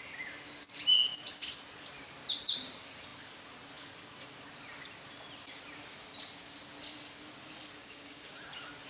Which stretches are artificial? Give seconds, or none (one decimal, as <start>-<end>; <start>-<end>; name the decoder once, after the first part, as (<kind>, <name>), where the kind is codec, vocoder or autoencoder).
7.8-8.4 (codec, DAC)